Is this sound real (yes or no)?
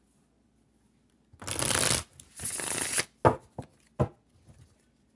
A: yes